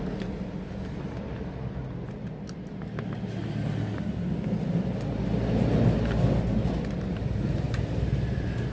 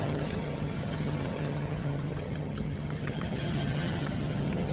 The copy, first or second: second